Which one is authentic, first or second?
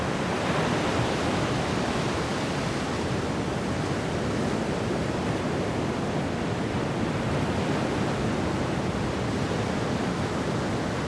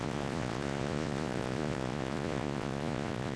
first